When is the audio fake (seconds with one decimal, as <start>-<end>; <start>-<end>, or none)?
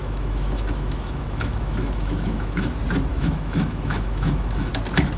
0.0-2.7; 3.1-4.7